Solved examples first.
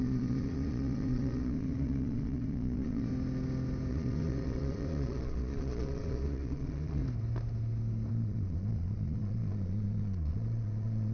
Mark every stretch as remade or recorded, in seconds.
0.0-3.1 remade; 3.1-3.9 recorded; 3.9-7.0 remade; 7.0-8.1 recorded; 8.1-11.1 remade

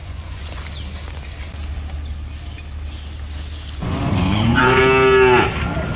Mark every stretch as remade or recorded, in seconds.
0.0-0.6 remade; 0.6-3.8 recorded; 3.8-4.8 remade; 4.8-6.0 recorded